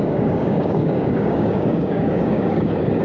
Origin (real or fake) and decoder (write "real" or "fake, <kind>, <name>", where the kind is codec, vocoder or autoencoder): fake, codec, DAC